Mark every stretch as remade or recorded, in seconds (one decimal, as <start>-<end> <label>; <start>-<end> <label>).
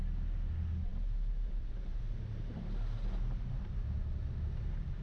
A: 0.0-5.0 recorded